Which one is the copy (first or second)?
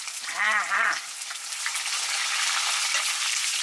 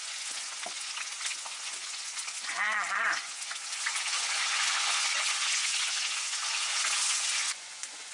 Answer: second